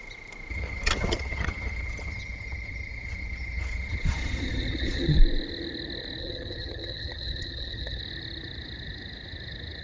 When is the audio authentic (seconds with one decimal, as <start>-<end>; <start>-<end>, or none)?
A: 0.0-0.5; 5.2-6.2; 8.0-9.8